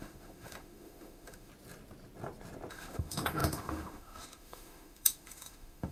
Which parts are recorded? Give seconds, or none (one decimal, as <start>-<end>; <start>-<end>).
1.5-2.7